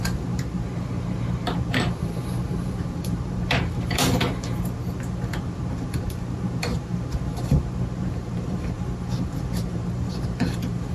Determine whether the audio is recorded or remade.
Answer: remade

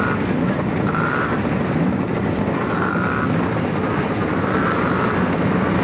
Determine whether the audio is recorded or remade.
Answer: recorded